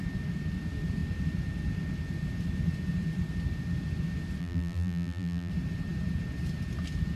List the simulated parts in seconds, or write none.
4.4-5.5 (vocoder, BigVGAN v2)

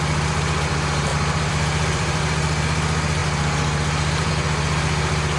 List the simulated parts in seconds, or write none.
1.1-2.2 (vocoder, BigVGAN v2)

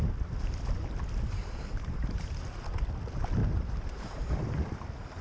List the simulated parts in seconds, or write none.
1.4-2.5 (vocoder, BigVGAN v2); 3.4-4.3

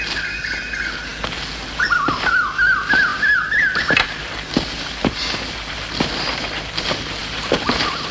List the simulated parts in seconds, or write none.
7.2-8.1 (vocoder, BigVGAN v2)

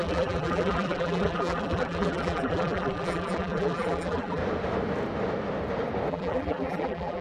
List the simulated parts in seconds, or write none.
0.0-4.4 (vocoder, BigVGAN v2); 6.1-7.2